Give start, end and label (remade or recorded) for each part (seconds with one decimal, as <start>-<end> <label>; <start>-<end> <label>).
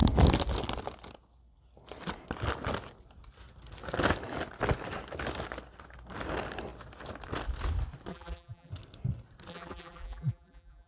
0.0-8.1 recorded; 8.1-8.7 remade; 8.7-9.5 recorded; 9.5-10.9 remade